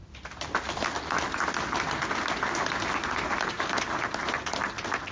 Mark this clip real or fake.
real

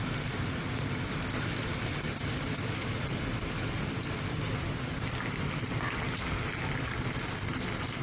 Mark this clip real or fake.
real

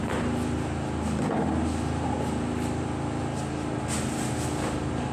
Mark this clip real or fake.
real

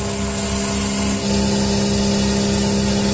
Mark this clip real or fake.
real